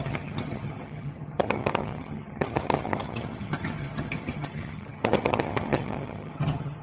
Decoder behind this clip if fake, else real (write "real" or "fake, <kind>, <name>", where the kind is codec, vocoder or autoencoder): fake, vocoder, HiFi-GAN